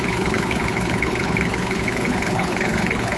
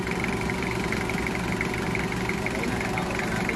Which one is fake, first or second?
first